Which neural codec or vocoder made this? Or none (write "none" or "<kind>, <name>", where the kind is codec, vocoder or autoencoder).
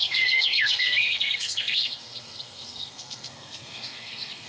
codec, SNAC